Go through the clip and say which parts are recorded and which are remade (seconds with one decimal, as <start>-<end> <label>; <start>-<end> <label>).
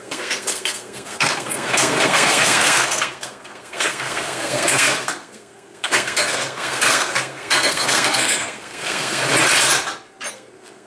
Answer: 0.0-9.2 remade; 9.2-10.3 recorded; 10.3-10.9 remade